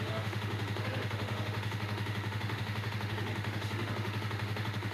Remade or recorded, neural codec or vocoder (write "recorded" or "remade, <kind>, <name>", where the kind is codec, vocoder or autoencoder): remade, autoencoder, DAC-VAE